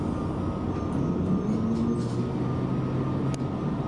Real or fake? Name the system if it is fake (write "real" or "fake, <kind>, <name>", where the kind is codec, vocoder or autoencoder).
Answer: real